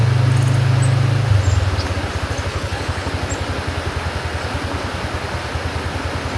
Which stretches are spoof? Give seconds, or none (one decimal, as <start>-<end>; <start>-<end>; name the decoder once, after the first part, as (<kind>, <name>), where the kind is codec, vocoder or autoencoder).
2.5-3.1 (codec, HILCodec)